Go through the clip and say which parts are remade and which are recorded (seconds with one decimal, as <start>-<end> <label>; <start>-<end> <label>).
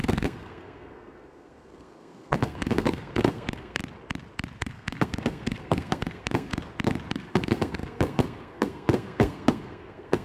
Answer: 0.0-3.8 remade; 3.8-4.6 recorded; 4.6-6.5 remade; 6.5-7.1 recorded; 7.1-10.2 remade